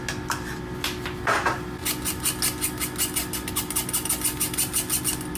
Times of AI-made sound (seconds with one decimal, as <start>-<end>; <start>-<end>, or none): none